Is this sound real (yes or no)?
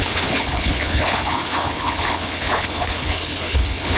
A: no